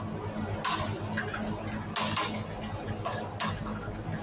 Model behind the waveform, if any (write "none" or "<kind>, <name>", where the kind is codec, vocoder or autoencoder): none